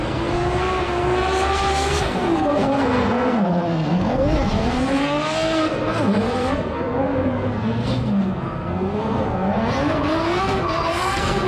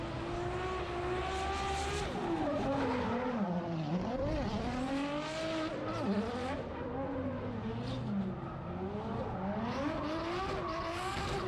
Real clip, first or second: second